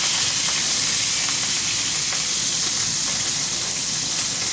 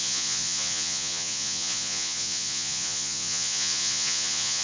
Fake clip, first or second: second